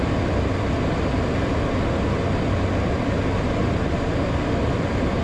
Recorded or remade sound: recorded